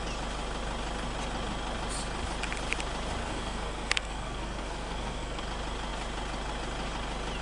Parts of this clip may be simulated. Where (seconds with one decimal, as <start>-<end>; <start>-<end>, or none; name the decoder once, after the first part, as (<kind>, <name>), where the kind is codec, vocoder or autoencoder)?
3.2-5.4 (codec, SNAC)